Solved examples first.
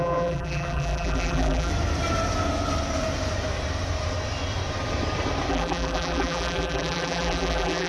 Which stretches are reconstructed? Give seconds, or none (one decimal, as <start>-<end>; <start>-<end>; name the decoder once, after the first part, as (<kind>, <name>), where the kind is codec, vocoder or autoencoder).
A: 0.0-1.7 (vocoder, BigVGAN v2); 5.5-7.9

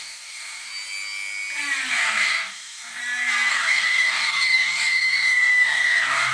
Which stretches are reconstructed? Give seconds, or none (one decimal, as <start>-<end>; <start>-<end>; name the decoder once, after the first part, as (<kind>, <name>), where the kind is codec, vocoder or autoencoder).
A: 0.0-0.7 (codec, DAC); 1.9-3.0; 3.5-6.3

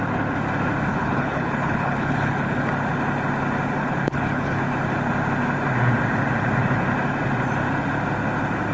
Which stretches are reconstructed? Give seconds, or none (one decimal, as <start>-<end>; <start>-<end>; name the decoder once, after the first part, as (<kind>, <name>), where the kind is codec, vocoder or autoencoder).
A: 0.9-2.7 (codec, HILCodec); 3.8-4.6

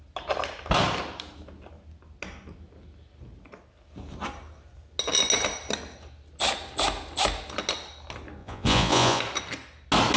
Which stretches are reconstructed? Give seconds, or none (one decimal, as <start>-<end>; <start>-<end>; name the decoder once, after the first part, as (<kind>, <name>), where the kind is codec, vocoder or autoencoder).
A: 8.4-9.2 (vocoder, Vocos)

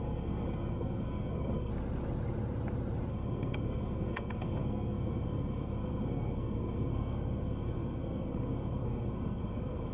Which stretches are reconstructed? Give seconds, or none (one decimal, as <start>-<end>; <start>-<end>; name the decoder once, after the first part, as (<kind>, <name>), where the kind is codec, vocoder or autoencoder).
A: 0.0-1.7 (codec, SNAC); 3.1-9.9

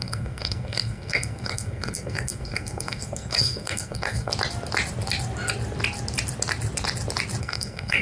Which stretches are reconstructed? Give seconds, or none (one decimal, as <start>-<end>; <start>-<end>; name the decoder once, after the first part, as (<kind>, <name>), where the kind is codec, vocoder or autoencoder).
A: 0.0-4.3 (codec, SNAC); 7.4-8.0